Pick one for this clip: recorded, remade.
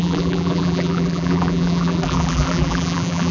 remade